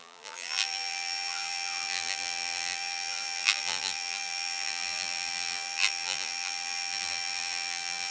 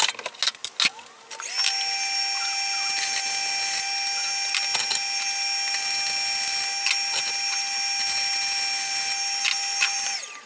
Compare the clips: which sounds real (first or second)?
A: second